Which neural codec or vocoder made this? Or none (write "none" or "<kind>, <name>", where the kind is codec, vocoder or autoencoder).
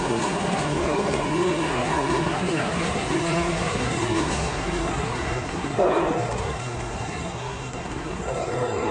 codec, SNAC